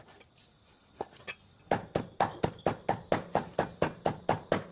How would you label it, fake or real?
real